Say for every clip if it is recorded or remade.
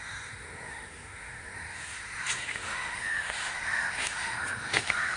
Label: remade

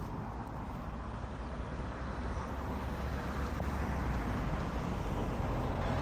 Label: recorded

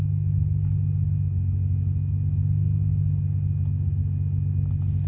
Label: recorded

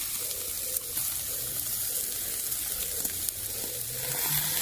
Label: recorded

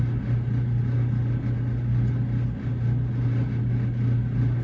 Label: recorded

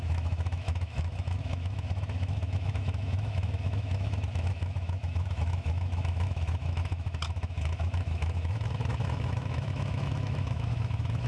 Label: remade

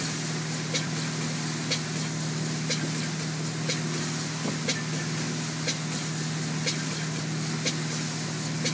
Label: recorded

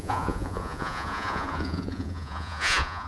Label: remade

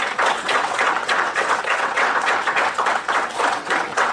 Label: remade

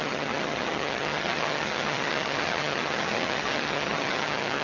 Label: remade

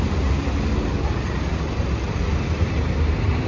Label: recorded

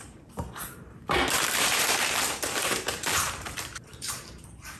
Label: remade